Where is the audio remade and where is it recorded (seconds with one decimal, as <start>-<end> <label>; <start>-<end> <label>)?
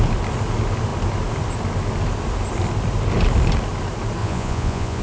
0.0-4.2 recorded; 4.2-5.0 remade